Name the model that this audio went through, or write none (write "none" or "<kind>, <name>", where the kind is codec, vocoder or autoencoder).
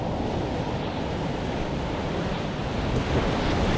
none